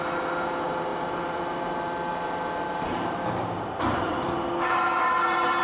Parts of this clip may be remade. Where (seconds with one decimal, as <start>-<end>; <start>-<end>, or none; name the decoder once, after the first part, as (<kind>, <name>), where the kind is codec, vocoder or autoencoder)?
0.9-1.7 (vocoder, BigVGAN v2); 2.1-5.6